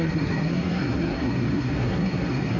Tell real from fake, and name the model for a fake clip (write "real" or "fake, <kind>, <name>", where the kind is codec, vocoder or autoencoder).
fake, codec, SNAC